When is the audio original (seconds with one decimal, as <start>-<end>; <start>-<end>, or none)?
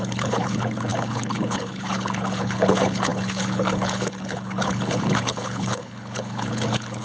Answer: none